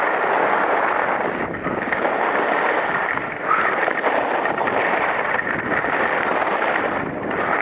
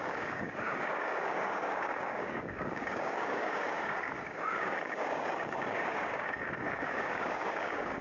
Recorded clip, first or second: first